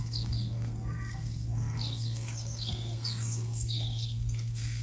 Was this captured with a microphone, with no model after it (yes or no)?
no